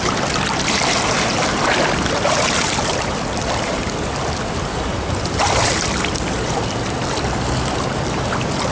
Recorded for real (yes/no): no